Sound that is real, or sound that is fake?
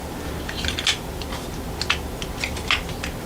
real